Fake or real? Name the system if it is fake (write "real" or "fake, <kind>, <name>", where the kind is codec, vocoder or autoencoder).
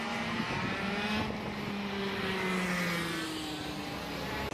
real